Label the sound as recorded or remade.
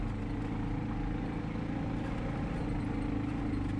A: recorded